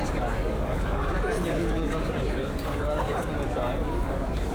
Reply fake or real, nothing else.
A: fake